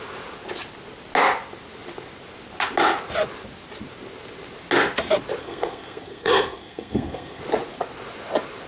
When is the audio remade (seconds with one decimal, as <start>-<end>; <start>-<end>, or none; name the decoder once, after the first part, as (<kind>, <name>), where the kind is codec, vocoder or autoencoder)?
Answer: 5.4-7.4 (codec, SNAC)